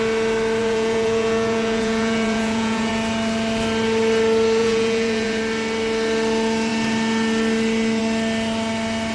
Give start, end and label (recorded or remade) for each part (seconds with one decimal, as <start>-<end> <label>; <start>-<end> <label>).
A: 0.0-0.6 recorded; 0.6-2.9 remade; 2.9-4.6 recorded; 4.6-5.4 remade; 5.4-9.1 recorded